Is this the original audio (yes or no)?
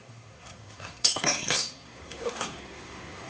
no